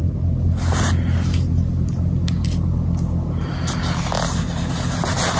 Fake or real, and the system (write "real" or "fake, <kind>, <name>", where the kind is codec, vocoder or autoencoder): real